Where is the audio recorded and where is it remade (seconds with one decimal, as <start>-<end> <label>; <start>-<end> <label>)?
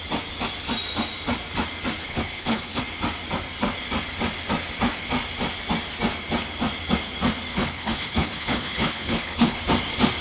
0.0-2.0 recorded; 2.0-2.8 remade; 2.8-7.5 recorded; 7.5-9.6 remade; 9.6-10.2 recorded